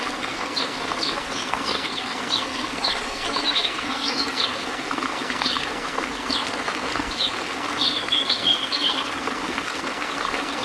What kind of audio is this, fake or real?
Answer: fake